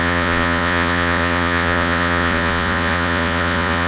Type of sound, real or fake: fake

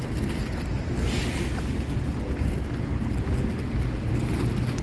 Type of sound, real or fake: real